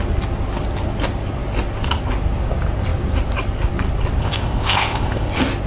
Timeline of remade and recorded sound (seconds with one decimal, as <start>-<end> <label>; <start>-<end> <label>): 0.0-4.2 recorded; 4.2-5.3 remade; 5.3-5.7 recorded